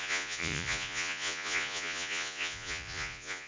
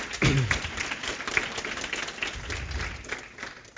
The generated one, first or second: first